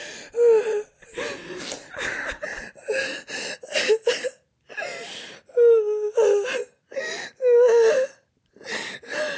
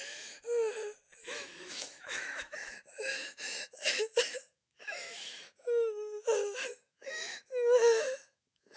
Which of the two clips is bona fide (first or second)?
first